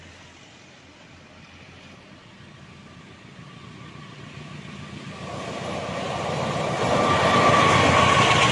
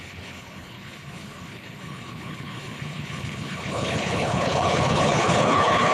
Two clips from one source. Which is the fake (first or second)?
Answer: second